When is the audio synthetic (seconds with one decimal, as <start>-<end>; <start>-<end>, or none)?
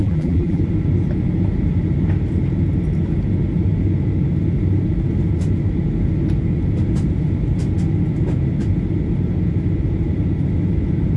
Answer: 0.0-0.6